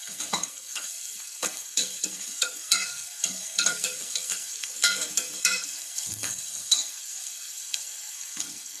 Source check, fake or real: fake